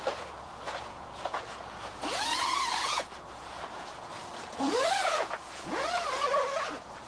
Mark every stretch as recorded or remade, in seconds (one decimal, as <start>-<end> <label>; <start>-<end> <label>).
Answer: 0.0-7.1 remade